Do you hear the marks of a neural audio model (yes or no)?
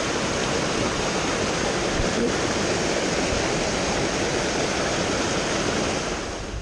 no